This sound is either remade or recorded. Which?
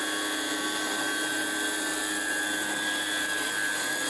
recorded